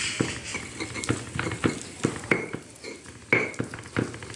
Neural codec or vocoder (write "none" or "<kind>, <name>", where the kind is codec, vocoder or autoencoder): none